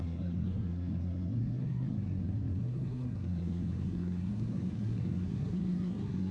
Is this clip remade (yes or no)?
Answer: yes